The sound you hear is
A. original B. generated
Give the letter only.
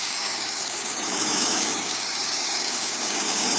B